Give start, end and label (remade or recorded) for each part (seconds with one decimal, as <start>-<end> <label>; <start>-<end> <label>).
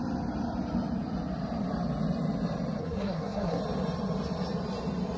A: 0.0-2.8 recorded; 2.8-3.6 remade; 3.6-5.2 recorded